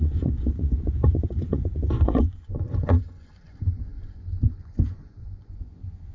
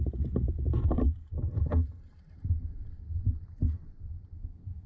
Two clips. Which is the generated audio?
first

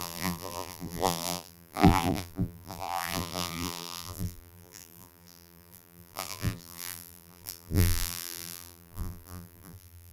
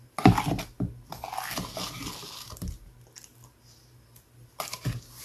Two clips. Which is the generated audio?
first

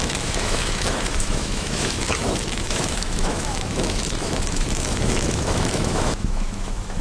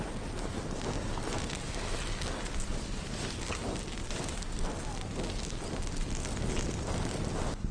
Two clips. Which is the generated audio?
first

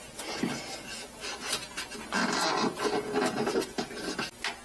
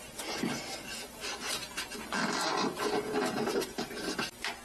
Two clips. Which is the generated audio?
second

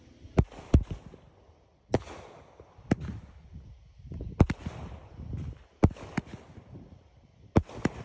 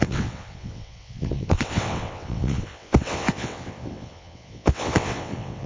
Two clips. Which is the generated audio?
second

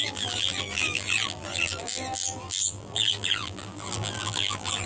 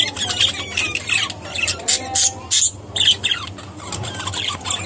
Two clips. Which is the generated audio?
first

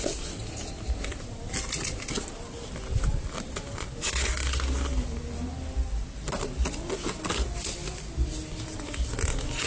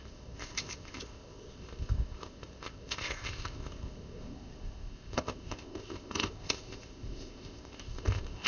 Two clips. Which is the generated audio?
second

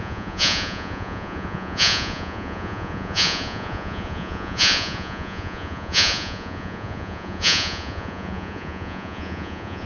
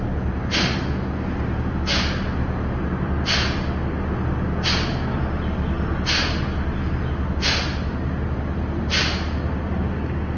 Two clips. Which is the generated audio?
first